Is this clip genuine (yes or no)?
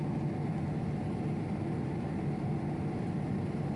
yes